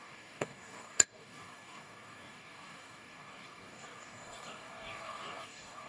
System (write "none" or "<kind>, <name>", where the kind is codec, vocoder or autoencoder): codec, DAC